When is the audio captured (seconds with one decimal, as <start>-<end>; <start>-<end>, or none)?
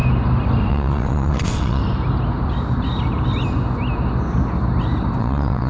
0.0-0.7; 1.8-5.2